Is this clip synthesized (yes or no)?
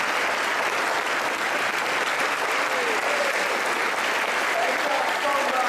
no